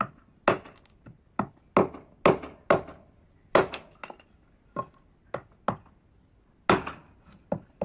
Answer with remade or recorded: recorded